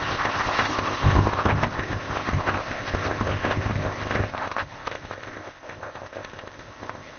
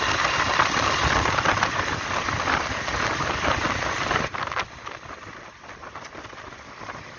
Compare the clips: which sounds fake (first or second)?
first